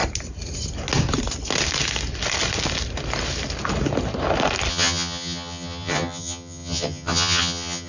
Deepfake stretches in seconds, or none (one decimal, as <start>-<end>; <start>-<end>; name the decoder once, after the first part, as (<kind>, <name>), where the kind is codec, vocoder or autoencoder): 4.7-7.9 (vocoder, HiFi-GAN)